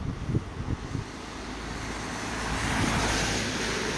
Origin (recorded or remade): recorded